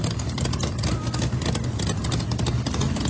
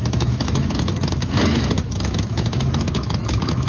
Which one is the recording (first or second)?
first